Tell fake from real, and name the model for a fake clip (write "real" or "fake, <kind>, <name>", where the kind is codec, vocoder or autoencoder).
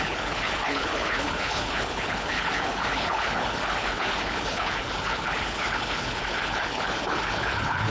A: fake, codec, HILCodec